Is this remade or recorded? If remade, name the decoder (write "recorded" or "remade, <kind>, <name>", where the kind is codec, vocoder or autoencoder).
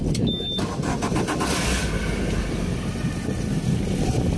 recorded